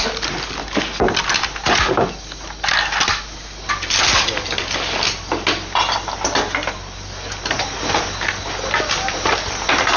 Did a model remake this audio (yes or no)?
no